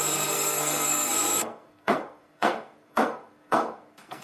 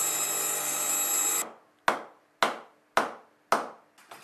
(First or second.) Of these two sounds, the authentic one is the second